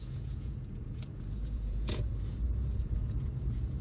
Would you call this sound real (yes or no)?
no